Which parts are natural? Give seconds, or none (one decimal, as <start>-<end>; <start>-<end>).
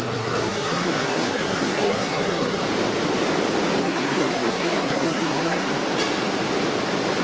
2.6-3.8; 5.7-7.2